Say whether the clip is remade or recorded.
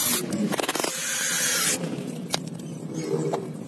remade